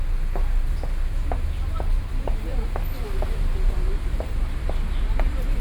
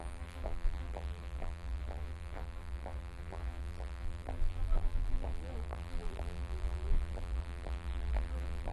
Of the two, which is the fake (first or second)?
second